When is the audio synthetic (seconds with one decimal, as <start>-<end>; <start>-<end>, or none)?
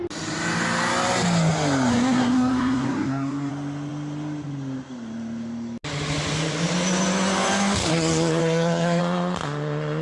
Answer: 1.9-3.5; 8.4-9.0